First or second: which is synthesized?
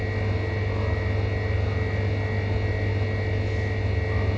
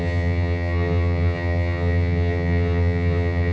second